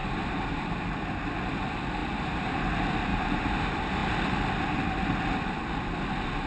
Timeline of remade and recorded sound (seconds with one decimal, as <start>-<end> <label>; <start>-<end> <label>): 0.0-0.8 remade; 0.8-2.0 recorded; 2.0-2.6 remade; 2.6-3.1 recorded; 3.1-3.6 remade; 3.6-6.5 recorded